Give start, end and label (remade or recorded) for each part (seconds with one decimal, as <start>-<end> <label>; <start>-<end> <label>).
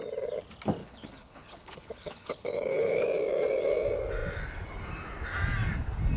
0.0-0.8 recorded; 0.8-3.0 remade; 3.0-6.2 recorded